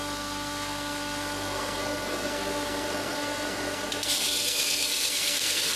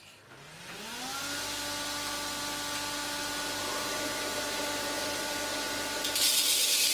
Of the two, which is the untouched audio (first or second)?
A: second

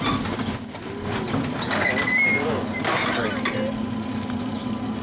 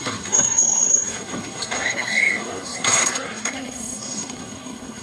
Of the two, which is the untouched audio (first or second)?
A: first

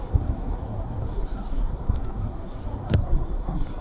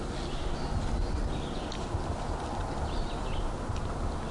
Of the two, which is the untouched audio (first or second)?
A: second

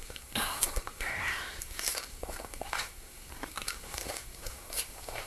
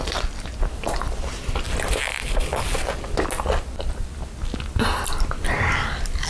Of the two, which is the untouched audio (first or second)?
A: second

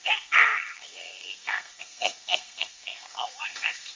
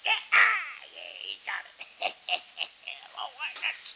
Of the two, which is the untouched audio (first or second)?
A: second